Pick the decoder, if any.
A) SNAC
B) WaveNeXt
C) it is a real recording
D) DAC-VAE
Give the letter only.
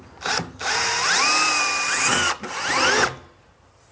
C